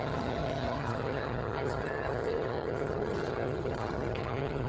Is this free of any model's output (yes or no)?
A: no